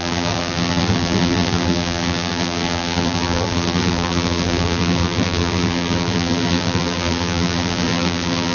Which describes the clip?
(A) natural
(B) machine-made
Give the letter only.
B